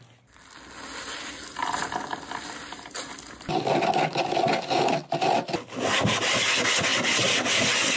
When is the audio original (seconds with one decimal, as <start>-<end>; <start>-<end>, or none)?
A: 0.0-8.0

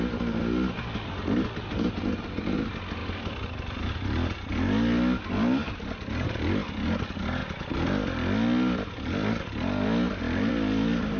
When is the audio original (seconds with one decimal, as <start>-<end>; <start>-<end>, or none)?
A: 0.0-11.2

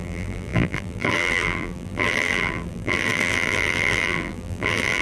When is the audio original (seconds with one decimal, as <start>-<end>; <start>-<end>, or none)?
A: none

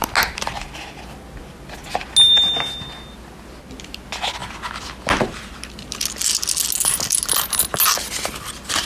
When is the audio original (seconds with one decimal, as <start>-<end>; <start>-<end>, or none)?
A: 0.0-8.9